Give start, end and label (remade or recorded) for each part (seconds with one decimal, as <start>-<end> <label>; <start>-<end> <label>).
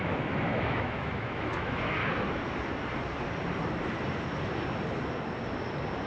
0.0-2.0 remade; 2.0-6.1 recorded